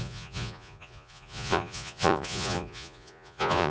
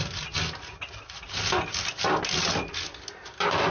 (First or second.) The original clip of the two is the second